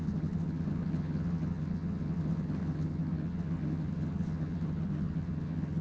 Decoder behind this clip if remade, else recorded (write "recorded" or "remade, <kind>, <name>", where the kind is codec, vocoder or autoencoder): remade, vocoder, HiFi-GAN